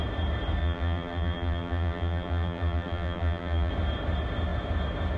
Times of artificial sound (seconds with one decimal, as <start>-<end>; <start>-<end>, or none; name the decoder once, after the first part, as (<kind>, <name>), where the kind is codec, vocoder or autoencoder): 0.6-3.7 (vocoder, BigVGAN v2)